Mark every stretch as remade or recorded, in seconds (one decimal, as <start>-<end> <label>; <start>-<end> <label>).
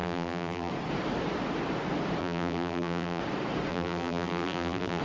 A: 0.0-0.7 remade; 0.7-2.2 recorded; 2.2-3.2 remade; 3.2-3.7 recorded; 3.7-5.0 remade